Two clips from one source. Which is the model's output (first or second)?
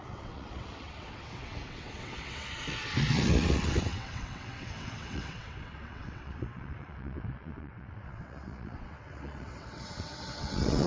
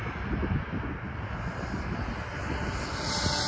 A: first